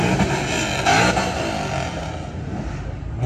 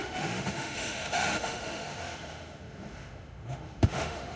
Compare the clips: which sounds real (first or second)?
first